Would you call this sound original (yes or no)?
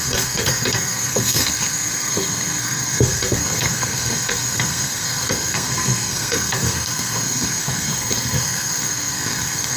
no